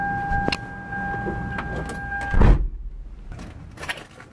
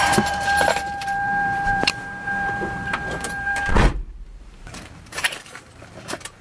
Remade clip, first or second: second